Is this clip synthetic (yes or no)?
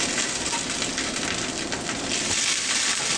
no